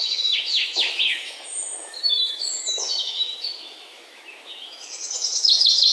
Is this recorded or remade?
remade